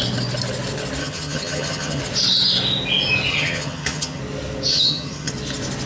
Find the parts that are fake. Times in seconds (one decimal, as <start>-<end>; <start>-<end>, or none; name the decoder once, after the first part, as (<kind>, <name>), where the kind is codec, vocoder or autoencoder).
1.0-2.0 (vocoder, HiFi-GAN); 3.3-4.2; 4.7-5.3